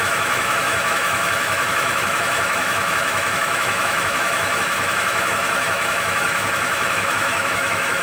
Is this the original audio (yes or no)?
no